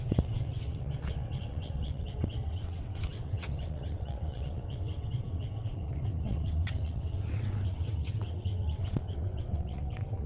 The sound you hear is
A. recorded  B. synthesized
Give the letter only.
B